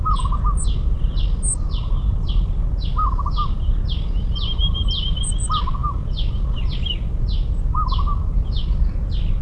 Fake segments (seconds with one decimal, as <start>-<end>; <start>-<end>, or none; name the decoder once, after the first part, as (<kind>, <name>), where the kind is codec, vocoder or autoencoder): none